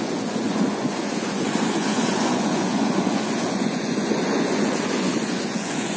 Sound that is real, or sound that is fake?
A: fake